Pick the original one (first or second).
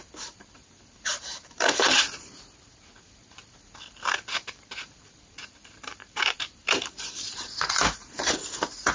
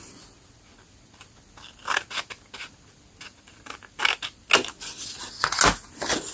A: second